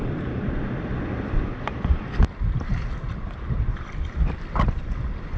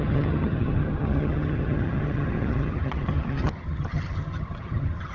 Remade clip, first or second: second